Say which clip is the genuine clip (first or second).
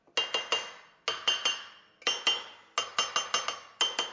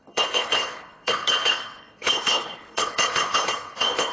first